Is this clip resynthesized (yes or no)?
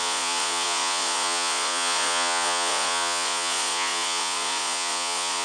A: yes